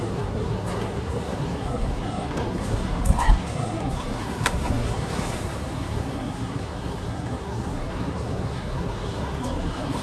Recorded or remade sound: remade